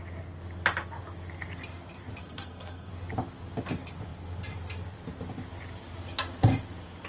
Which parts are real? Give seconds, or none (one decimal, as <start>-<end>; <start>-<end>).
0.0-2.2; 2.9-7.1